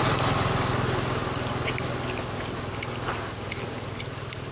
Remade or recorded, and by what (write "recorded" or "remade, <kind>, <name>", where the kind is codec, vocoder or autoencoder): recorded